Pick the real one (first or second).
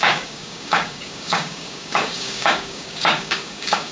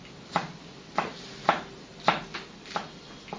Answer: second